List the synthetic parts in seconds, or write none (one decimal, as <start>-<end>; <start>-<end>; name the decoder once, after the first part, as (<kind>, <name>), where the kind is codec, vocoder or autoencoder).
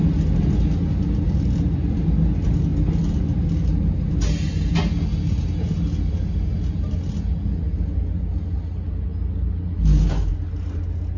none